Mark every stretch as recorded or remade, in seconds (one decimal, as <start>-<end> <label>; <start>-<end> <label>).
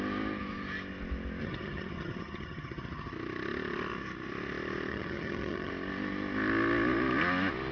0.0-1.4 recorded; 1.4-3.1 remade; 3.1-4.9 recorded; 4.9-5.7 remade; 5.7-7.7 recorded